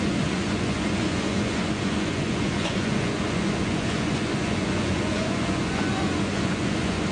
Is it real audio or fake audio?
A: fake